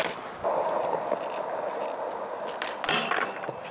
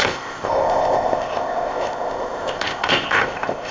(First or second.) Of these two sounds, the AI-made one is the second